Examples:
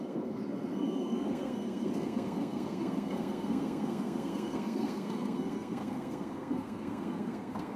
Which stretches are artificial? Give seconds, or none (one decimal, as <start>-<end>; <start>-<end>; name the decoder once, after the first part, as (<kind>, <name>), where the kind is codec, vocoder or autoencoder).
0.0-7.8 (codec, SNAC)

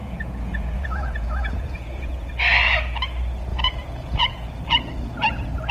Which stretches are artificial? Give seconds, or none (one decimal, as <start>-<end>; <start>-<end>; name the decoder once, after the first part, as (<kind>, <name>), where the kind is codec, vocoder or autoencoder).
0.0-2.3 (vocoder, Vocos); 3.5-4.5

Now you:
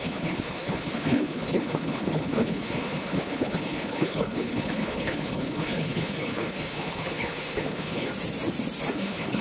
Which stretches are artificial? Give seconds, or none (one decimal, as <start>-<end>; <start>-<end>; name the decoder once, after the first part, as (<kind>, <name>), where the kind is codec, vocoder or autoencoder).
0.0-8.1 (codec, HILCodec); 8.9-9.4

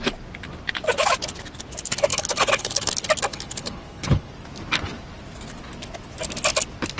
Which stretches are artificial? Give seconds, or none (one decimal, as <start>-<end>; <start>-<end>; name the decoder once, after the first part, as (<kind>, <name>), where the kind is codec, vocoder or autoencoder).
2.1-2.9 (codec, HILCodec); 3.3-4.3

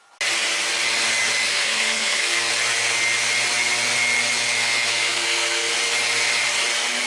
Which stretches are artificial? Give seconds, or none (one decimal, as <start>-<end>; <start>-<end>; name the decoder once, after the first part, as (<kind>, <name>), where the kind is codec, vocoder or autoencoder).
1.5-2.5 (codec, SNAC); 4.9-5.7